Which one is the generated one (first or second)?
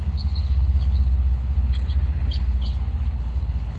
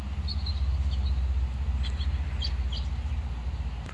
first